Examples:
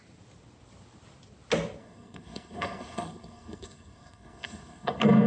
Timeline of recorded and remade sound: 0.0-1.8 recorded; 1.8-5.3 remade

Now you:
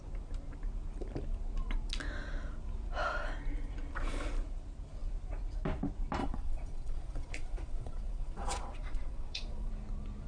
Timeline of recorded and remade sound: 0.0-6.2 recorded; 6.2-9.7 remade; 9.7-10.3 recorded

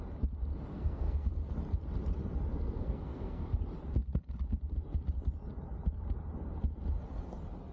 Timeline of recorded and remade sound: 0.0-0.7 recorded; 0.7-1.3 remade; 1.3-2.5 recorded; 2.5-3.5 remade; 3.5-7.7 recorded

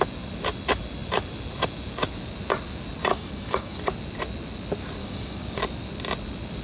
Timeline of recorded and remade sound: 0.0-3.1 recorded; 3.1-3.8 remade; 3.8-5.0 recorded; 5.0-5.6 remade; 5.6-6.6 recorded